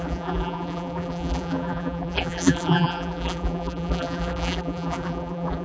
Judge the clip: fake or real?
fake